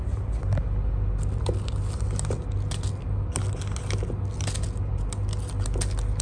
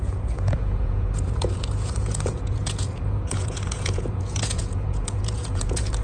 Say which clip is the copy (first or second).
second